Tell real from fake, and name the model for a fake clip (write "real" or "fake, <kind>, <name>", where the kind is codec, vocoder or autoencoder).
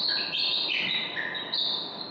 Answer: fake, vocoder, BigVGAN v2